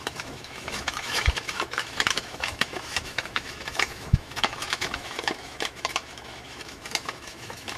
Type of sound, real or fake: fake